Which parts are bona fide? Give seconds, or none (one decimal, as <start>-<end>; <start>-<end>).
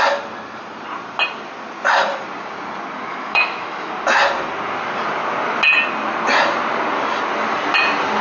0.0-3.1; 3.9-8.2